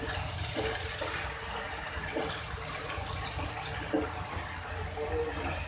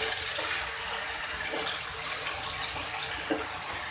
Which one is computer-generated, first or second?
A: first